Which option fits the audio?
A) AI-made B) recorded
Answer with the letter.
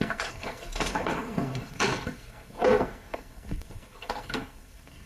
A